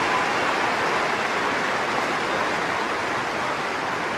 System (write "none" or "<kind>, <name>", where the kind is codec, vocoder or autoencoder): none